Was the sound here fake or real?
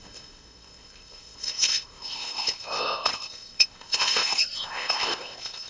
fake